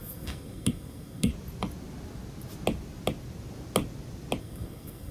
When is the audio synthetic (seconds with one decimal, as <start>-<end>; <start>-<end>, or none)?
0.0-1.3; 4.4-5.1